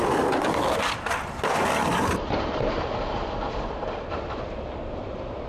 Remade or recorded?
remade